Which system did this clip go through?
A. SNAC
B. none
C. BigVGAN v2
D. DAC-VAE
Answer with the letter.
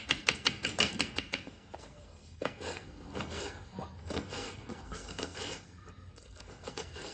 A